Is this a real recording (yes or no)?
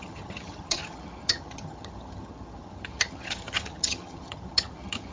no